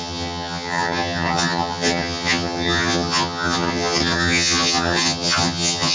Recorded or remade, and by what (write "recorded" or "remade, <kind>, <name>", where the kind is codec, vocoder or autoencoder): remade, vocoder, HiFi-GAN